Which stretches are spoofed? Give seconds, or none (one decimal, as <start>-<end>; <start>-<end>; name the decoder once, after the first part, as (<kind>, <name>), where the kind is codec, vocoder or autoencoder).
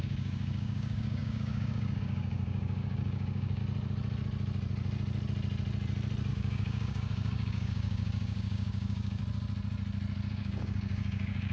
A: 0.0-3.6 (codec, DAC); 6.3-9.2; 10.3-11.5